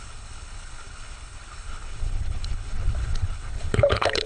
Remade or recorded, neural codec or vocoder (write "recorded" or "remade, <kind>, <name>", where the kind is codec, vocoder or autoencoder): remade, codec, HILCodec